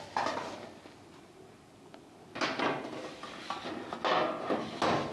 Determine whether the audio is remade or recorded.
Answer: recorded